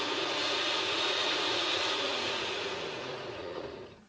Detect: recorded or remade remade